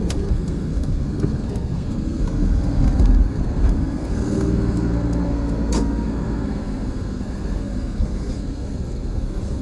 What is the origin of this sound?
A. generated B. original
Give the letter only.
A